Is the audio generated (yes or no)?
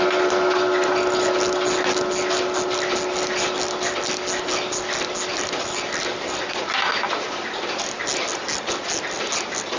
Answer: no